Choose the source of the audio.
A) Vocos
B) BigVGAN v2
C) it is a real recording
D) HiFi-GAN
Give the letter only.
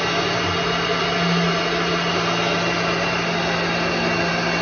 C